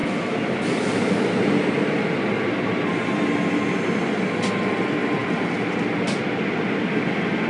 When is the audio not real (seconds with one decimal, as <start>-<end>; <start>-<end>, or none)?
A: none